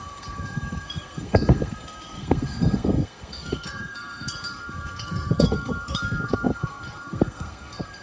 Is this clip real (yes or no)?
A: no